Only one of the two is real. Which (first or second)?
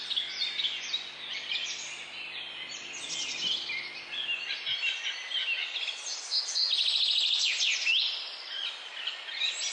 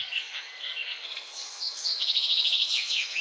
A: first